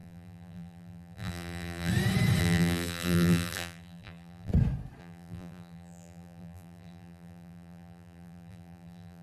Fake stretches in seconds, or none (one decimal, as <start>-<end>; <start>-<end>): 0.0-1.9; 2.4-4.5; 5.0-9.2